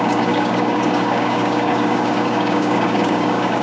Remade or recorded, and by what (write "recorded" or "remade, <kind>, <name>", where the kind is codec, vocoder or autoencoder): remade, codec, DAC